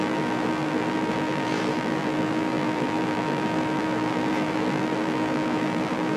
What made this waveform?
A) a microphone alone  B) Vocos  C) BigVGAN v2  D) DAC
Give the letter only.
C